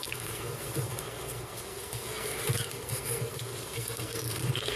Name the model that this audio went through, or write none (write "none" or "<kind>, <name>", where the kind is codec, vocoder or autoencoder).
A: codec, SNAC